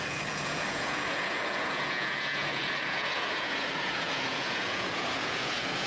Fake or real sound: fake